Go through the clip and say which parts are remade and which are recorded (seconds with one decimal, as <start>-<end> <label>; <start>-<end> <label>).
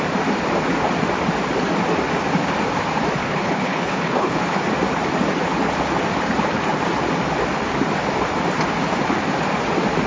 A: 0.0-3.2 recorded; 3.2-4.6 remade; 4.6-10.1 recorded